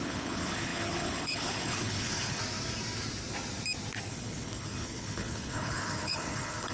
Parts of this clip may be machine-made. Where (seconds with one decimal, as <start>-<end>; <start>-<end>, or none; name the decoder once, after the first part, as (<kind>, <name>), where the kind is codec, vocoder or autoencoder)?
0.0-2.4 (codec, HILCodec); 4.1-6.7